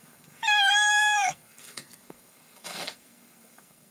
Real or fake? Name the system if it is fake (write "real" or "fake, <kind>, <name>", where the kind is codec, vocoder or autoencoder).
fake, codec, SNAC